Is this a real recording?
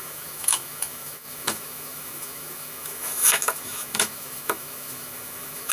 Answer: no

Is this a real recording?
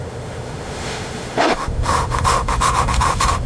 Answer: no